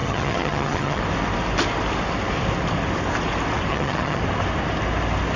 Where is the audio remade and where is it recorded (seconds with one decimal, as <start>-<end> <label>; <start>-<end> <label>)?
0.0-1.0 remade; 1.0-3.7 recorded; 3.7-4.2 remade; 4.2-5.4 recorded